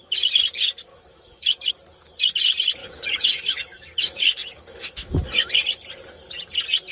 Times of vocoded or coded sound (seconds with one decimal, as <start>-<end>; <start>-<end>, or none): 0.9-1.7; 2.8-5.1